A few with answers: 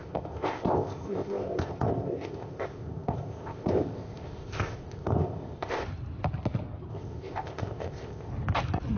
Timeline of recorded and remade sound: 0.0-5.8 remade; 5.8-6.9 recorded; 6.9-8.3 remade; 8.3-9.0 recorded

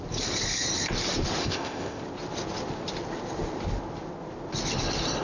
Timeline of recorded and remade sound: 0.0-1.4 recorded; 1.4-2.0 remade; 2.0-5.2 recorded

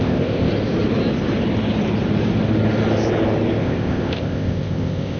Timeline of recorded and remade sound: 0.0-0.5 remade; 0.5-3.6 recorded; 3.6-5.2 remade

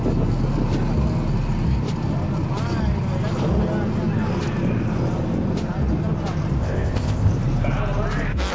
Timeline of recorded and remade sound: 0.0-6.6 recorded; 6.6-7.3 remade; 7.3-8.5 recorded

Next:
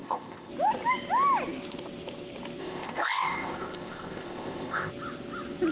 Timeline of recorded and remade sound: 0.0-0.5 remade; 0.5-2.6 recorded; 2.6-4.9 remade; 4.9-5.7 recorded